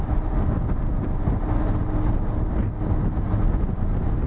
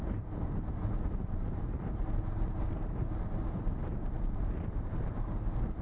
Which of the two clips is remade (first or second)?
second